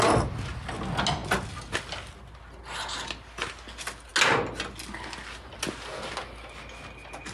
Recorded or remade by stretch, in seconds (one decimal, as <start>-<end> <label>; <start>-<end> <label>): 0.0-7.3 recorded